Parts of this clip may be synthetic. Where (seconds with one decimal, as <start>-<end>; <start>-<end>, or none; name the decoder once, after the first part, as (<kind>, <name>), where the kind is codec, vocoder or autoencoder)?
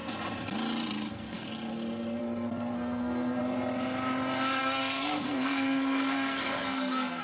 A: 1.1-1.5 (codec, SNAC); 2.2-3.4; 4.6-7.2